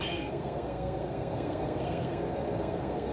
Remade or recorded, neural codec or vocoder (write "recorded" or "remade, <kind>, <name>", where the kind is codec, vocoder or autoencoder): remade, codec, SNAC